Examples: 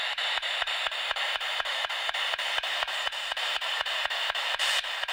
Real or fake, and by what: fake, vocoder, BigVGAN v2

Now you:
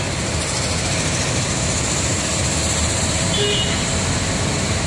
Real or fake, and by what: real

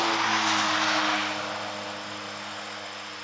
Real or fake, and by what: real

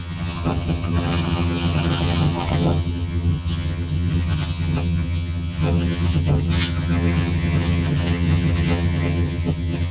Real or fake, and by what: fake, vocoder, HiFi-GAN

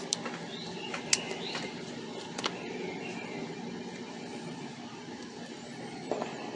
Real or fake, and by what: fake, vocoder, BigVGAN v2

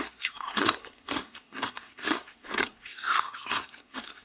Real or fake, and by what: fake, codec, SNAC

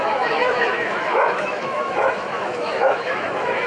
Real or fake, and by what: fake, autoencoder, DAC-VAE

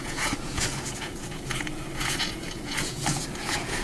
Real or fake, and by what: fake, vocoder, Vocos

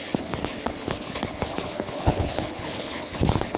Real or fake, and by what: fake, codec, HILCodec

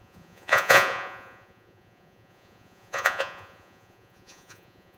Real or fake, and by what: fake, vocoder, Vocos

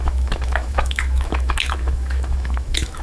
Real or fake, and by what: fake, autoencoder, DAC-VAE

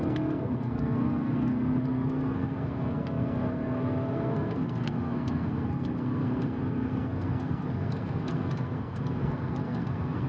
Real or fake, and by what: fake, codec, SNAC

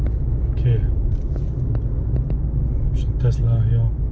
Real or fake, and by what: real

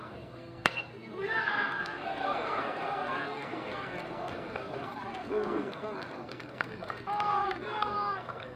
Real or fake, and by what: fake, codec, SNAC